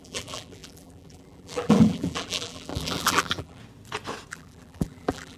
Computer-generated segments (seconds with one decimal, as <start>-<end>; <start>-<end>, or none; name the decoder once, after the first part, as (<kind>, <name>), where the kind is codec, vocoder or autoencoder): 0.0-3.6 (vocoder, BigVGAN v2); 4.3-5.4